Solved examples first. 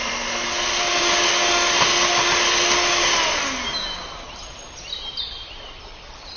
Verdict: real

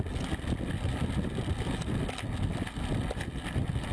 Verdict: real